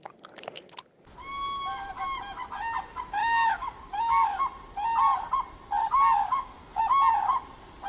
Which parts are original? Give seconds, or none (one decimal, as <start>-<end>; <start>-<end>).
0.0-3.2; 4.4-5.8; 6.8-7.9